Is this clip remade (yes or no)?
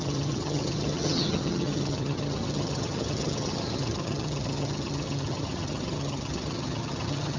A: yes